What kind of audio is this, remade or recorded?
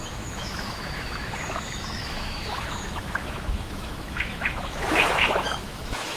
remade